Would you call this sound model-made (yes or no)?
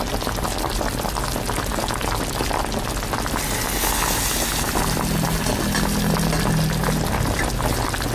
no